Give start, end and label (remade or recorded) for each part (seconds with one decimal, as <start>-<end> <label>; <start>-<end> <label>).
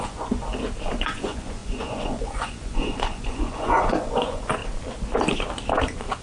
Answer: 0.0-0.4 remade; 0.4-0.9 recorded; 0.9-4.6 remade; 4.6-6.2 recorded